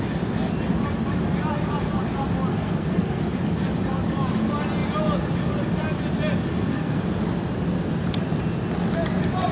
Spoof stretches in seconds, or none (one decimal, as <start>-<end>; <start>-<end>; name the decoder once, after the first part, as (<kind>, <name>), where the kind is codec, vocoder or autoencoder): 2.5-3.2 (codec, SNAC); 6.5-7.0